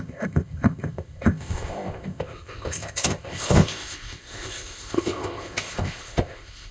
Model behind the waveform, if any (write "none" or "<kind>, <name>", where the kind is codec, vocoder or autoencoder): codec, ZipCodec